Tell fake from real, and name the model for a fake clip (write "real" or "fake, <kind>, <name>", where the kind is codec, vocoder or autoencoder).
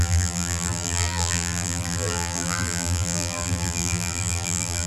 fake, vocoder, BigVGAN v2